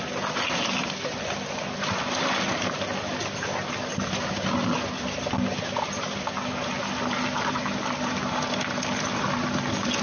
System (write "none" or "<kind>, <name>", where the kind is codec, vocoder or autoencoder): none